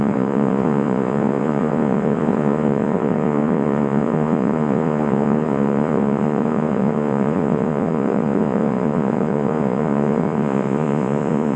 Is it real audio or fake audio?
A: fake